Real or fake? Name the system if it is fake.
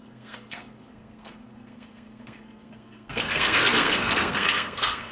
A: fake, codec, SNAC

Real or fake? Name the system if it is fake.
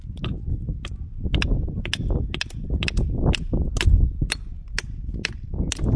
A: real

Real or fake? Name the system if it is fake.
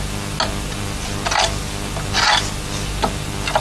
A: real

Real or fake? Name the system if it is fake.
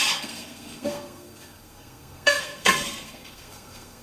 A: fake, codec, SNAC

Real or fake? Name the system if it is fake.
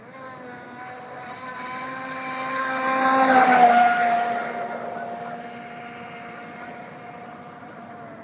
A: real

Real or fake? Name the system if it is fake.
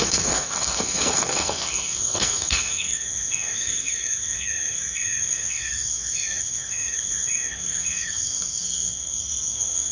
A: fake, codec, SNAC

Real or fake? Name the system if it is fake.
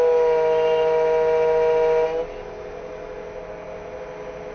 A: real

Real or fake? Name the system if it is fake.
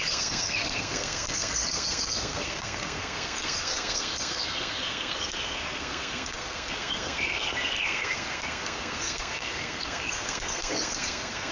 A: fake, codec, SNAC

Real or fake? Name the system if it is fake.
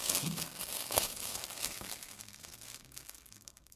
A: fake, codec, SNAC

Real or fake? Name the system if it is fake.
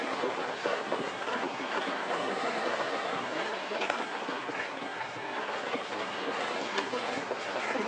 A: fake, codec, SNAC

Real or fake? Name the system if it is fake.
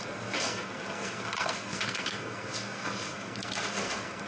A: fake, codec, SNAC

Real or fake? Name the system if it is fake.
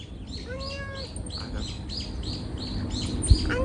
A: real